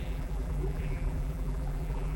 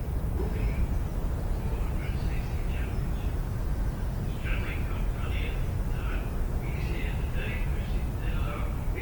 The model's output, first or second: first